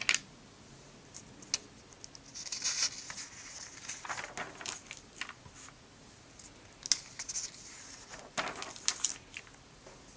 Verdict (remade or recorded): recorded